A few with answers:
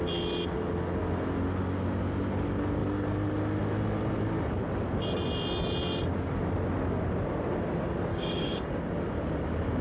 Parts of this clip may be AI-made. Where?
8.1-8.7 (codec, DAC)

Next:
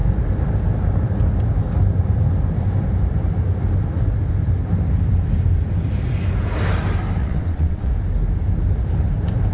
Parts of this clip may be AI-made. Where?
7.2-7.9 (vocoder, WaveNeXt)

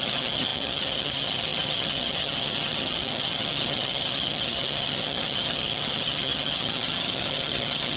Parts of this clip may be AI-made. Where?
0.0-8.0 (vocoder, HiFi-GAN)

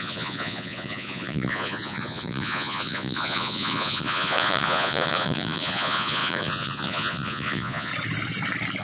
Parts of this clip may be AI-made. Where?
0.0-7.9 (vocoder, Vocos)

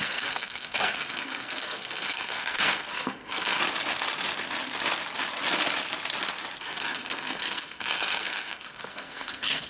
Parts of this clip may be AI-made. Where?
0.0-3.6 (codec, SNAC); 6.6-9.7

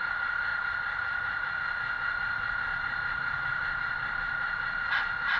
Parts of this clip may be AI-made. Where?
0.5-1.5 (vocoder, BigVGAN v2); 2.7-3.6